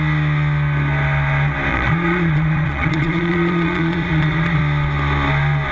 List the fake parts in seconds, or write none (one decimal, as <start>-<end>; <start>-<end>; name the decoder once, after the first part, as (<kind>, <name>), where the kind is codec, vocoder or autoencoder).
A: 1.7-4.6 (vocoder, Vocos)